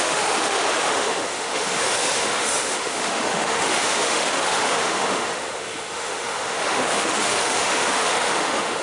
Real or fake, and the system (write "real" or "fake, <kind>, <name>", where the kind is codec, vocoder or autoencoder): fake, autoencoder, DAC-VAE